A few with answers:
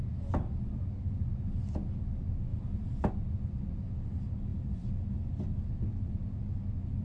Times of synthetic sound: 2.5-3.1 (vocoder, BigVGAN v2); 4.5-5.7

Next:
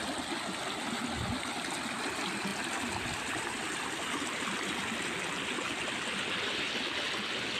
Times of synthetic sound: 2.5-5.0 (vocoder, BigVGAN v2)

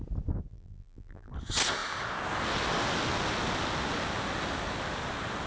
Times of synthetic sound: 0.5-1.3 (vocoder, BigVGAN v2)

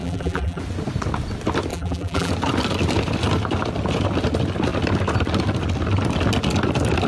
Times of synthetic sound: 0.0-0.6 (vocoder, BigVGAN v2); 1.7-2.3

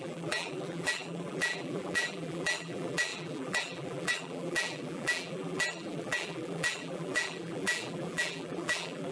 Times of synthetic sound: 0.0-9.1 (vocoder, BigVGAN v2)

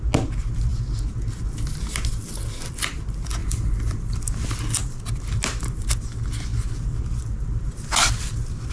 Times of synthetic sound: 3.4-4.2 (vocoder, BigVGAN v2); 4.8-5.4; 6.5-7.2

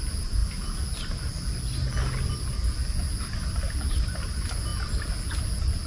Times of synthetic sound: 0.0-0.4 (vocoder, BigVGAN v2); 3.9-4.7